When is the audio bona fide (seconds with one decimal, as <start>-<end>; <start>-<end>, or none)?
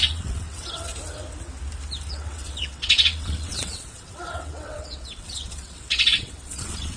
0.9-2.1